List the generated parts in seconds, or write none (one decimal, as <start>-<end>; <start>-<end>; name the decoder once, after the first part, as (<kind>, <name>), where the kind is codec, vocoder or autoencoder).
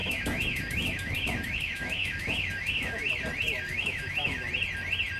0.0-3.1 (autoencoder, DAC-VAE); 3.7-4.5